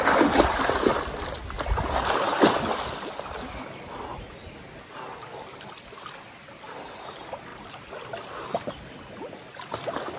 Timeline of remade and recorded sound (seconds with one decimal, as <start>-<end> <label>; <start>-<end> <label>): 0.0-10.2 recorded